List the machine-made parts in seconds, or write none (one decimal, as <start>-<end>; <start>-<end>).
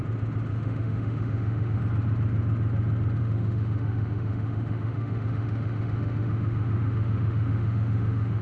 0.5-1.8; 3.2-8.4